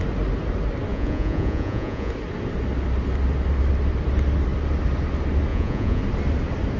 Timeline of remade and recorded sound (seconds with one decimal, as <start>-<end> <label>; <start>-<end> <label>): 0.0-0.9 recorded; 0.9-2.1 remade; 2.1-5.5 recorded; 5.5-6.0 remade; 6.0-6.8 recorded

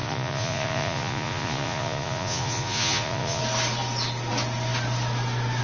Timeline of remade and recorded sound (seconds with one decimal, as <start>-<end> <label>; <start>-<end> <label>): 0.0-3.4 remade; 3.4-5.6 recorded